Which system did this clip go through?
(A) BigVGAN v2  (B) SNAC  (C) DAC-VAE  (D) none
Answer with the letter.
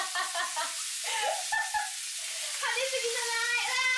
D